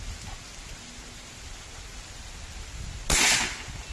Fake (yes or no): no